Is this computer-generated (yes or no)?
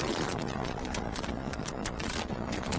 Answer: yes